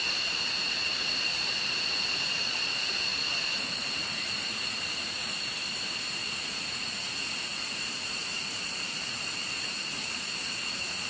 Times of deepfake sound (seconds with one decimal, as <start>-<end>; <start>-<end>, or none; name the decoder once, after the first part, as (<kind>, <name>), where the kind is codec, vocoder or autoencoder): 0.0-5.5 (vocoder, Vocos); 6.1-11.1